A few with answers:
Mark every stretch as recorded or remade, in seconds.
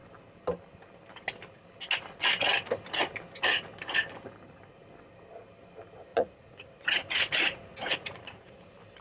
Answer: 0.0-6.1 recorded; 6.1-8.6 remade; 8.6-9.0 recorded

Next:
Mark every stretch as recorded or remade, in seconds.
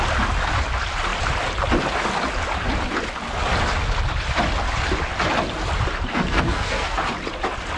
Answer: 0.0-6.1 recorded; 6.1-7.0 remade; 7.0-7.8 recorded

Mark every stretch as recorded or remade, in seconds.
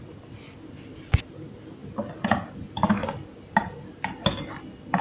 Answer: 0.0-5.0 recorded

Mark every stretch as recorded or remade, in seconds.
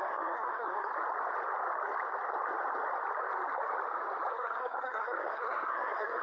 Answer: 0.0-0.9 remade; 0.9-4.3 recorded; 4.3-6.2 remade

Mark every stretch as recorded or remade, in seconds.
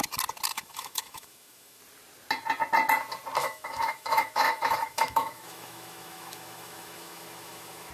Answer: 0.0-0.5 recorded; 0.5-1.8 remade; 1.8-3.4 recorded; 3.4-7.9 remade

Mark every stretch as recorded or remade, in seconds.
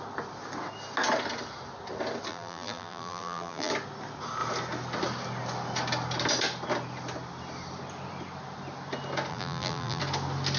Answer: 0.0-2.3 recorded; 2.3-3.7 remade; 3.7-9.3 recorded; 9.3-10.0 remade; 10.0-10.6 recorded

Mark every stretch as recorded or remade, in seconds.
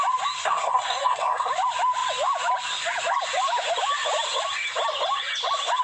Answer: 0.0-0.4 recorded; 0.4-1.5 remade; 1.5-5.8 recorded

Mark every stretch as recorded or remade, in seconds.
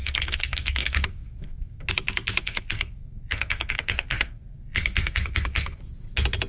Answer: 0.0-1.9 remade; 1.9-2.4 recorded; 2.4-5.8 remade; 5.8-6.5 recorded